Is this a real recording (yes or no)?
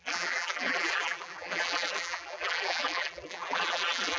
no